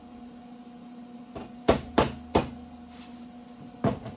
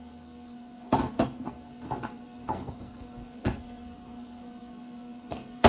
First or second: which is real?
first